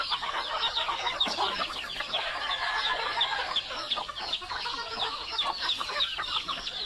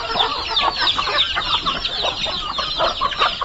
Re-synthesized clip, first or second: first